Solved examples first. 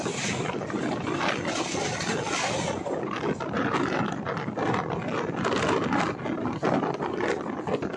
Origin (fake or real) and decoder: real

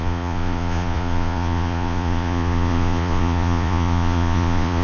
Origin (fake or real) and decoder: fake, vocoder, Vocos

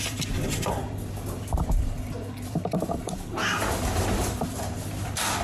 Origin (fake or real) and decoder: fake, vocoder, BigVGAN v2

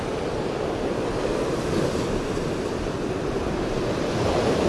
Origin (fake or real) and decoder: real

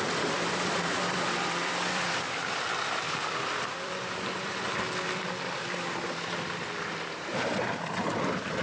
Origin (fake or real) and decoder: fake, vocoder, BigVGAN v2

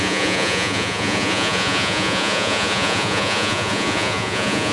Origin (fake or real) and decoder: fake, vocoder, Vocos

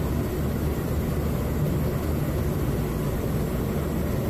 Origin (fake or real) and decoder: real